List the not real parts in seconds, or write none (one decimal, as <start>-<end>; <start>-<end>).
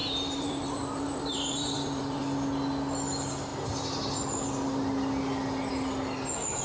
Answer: 0.0-2.2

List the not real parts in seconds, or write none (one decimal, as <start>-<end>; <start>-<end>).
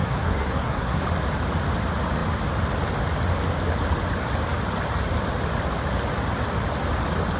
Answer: 0.0-1.0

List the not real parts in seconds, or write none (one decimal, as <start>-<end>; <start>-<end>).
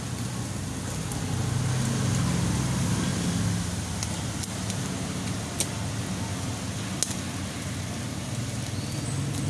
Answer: none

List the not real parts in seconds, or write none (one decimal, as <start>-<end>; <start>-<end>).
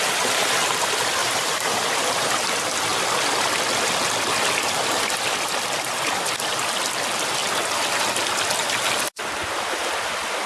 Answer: 1.2-2.4; 9.4-10.1